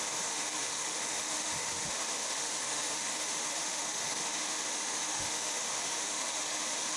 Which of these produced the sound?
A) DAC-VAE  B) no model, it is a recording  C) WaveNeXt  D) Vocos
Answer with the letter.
A